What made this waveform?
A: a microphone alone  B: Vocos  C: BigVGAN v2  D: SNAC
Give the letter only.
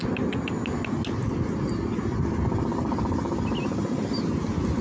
A